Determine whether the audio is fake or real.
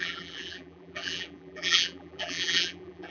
fake